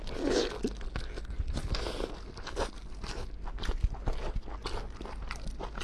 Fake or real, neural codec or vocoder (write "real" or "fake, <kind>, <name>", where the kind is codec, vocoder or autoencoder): real